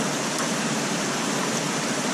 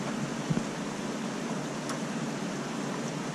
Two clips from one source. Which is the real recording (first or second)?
second